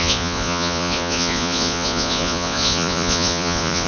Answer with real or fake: fake